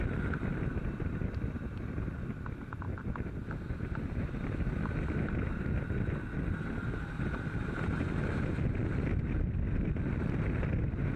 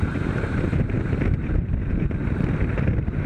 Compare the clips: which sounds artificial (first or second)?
second